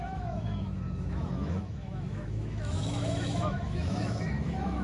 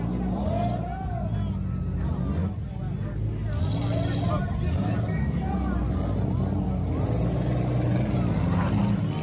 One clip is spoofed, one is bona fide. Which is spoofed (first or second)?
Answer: first